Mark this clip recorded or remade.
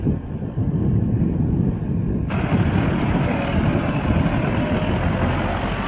recorded